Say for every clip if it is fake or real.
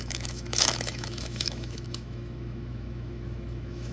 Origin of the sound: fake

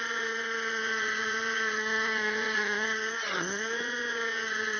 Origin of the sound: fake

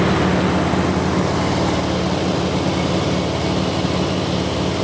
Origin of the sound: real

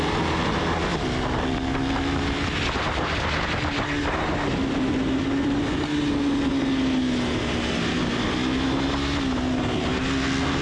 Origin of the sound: real